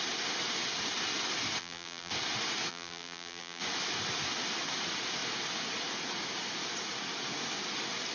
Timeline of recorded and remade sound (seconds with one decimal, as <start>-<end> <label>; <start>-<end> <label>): 0.0-1.6 recorded; 1.6-2.1 remade; 2.1-2.7 recorded; 2.7-3.6 remade; 3.6-8.1 recorded